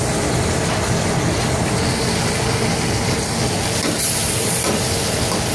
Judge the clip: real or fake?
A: real